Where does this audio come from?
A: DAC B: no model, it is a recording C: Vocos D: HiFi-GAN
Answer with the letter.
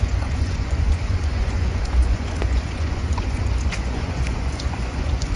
C